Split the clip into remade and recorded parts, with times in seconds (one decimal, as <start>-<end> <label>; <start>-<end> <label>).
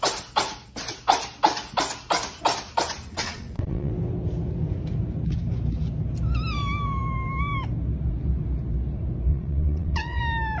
0.0-3.1 recorded; 3.1-3.9 remade; 3.9-9.3 recorded; 9.3-10.2 remade; 10.2-10.6 recorded